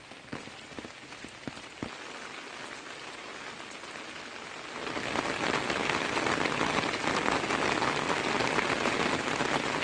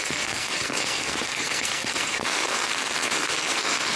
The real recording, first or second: first